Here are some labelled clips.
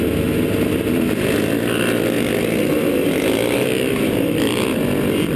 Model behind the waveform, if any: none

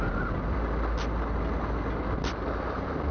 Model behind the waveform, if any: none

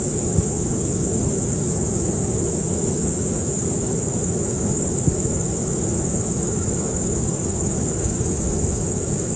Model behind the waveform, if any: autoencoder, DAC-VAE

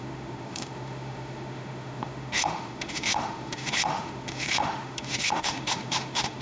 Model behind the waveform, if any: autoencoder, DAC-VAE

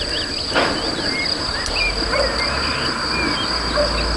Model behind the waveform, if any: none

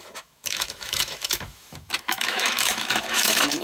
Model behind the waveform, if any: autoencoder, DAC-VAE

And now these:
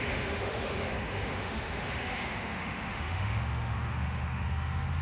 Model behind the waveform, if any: autoencoder, DAC-VAE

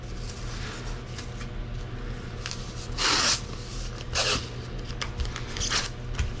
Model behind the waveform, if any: none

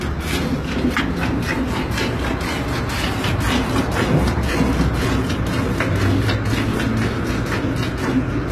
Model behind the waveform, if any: none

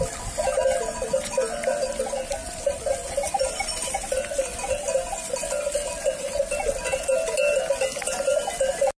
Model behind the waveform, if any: none